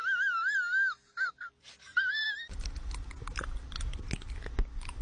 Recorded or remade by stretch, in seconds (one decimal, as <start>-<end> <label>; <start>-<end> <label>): 0.0-5.0 recorded